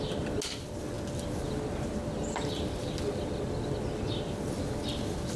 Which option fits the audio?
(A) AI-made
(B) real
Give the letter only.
B